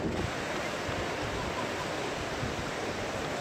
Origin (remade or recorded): recorded